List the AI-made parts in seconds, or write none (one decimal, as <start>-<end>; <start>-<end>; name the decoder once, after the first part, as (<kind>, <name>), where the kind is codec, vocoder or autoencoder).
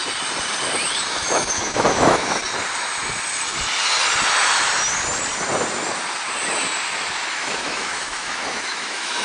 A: 1.1-2.4 (autoencoder, DAC-VAE); 7.3-9.2